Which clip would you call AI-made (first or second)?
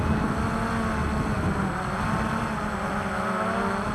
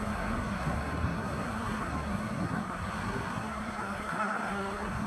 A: second